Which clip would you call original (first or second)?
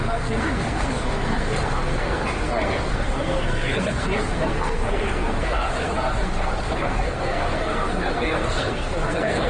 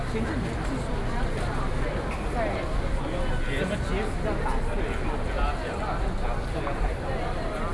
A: second